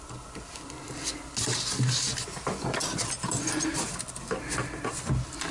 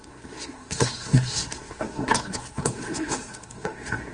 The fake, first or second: second